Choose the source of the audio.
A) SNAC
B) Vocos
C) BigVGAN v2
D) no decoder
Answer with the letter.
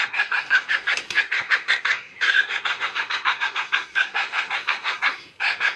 A